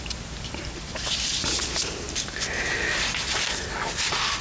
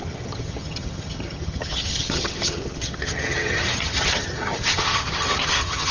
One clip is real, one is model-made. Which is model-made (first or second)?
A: second